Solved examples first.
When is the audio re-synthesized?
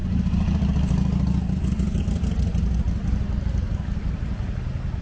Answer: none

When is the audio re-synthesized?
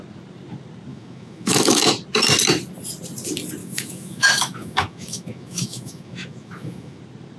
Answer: 0.9-1.9 (autoencoder, DAC-VAE); 3.6-7.0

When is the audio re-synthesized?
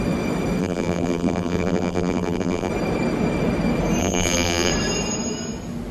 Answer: 0.6-2.7 (vocoder, BigVGAN v2); 4.0-4.7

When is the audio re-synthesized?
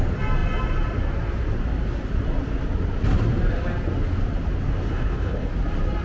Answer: 4.9-5.5 (codec, HILCodec)